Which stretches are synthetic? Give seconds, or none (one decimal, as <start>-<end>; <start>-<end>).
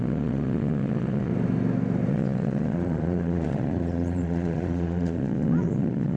0.0-1.3; 2.1-6.2